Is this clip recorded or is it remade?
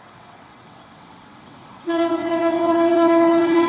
remade